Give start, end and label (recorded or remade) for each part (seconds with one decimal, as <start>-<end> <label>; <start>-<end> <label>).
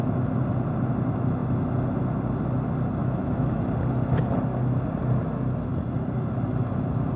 0.0-3.0 recorded; 3.0-3.6 remade; 3.6-7.2 recorded